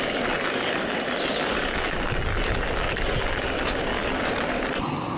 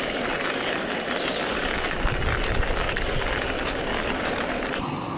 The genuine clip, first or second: first